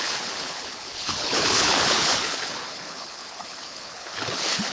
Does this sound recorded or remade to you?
remade